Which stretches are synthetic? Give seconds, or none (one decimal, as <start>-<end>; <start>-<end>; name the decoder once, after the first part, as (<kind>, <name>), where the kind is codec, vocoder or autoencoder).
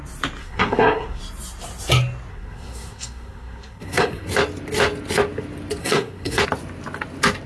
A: 0.4-1.2 (codec, SNAC); 2.3-4.3; 5.8-6.4